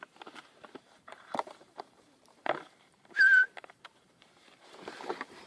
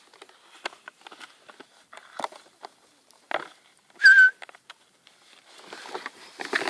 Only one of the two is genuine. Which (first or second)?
second